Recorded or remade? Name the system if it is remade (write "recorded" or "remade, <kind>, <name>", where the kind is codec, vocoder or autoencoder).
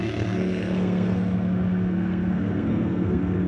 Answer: remade, codec, SNAC